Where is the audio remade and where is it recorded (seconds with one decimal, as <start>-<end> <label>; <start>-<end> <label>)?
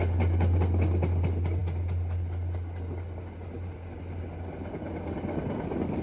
0.0-6.0 recorded